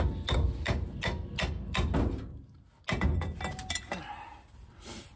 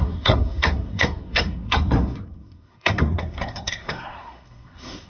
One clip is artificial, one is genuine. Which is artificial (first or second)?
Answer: second